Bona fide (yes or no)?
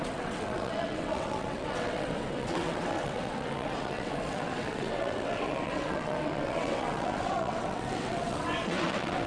no